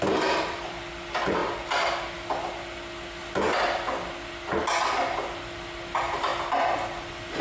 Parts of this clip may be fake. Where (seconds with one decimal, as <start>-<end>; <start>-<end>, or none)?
none